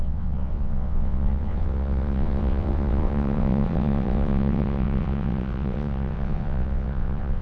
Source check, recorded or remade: remade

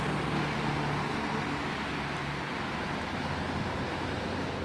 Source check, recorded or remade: recorded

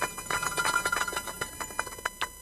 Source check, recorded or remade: recorded